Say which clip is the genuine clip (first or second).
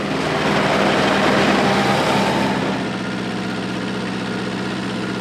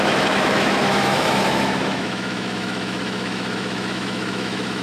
first